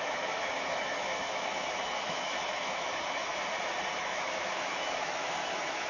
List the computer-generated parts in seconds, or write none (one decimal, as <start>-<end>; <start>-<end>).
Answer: 0.0-3.3; 4.0-5.9